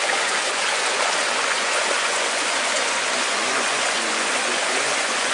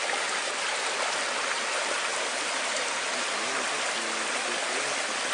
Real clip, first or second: second